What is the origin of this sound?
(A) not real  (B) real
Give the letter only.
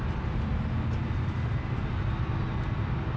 B